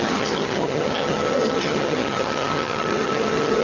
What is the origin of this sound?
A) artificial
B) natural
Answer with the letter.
A